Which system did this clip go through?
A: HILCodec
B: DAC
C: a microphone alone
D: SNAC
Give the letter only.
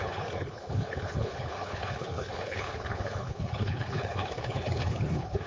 A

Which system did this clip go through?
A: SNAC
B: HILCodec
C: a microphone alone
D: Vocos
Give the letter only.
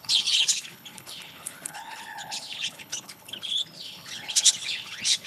B